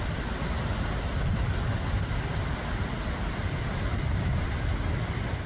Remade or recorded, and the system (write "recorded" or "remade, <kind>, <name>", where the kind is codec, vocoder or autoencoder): recorded